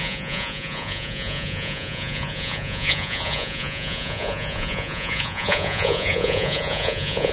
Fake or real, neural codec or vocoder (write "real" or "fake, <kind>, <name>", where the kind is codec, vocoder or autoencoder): fake, vocoder, Vocos